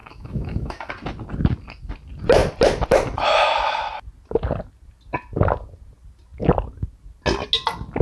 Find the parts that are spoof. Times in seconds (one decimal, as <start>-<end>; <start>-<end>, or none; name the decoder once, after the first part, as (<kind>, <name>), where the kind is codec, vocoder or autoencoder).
0.0-0.9 (autoencoder, DAC-VAE)